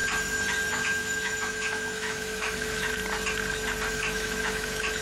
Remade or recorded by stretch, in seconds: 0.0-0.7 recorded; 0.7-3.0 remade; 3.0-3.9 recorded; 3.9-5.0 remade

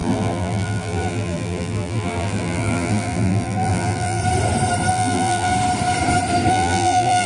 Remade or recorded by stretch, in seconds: 0.0-4.2 remade; 4.2-4.9 recorded; 4.9-5.5 remade; 5.5-6.5 recorded; 6.5-7.3 remade

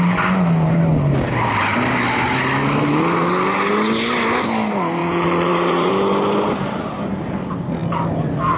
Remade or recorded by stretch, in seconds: 0.0-5.0 recorded; 5.0-5.9 remade; 5.9-8.6 recorded

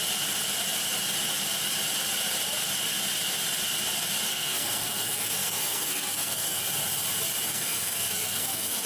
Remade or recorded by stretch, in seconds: 0.0-4.3 recorded; 4.3-6.6 remade; 6.6-7.5 recorded; 7.5-8.9 remade